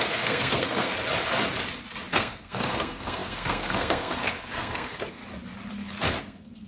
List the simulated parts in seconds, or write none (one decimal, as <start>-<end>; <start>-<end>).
0.0-0.9; 2.1-5.2; 6.2-6.7